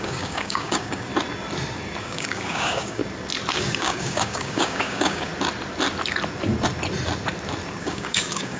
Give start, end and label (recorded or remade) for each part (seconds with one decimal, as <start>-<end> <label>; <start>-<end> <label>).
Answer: 0.0-1.1 remade; 1.1-2.0 recorded; 2.0-3.0 remade; 3.0-3.5 recorded; 3.5-5.3 remade; 5.3-7.8 recorded; 7.8-8.6 remade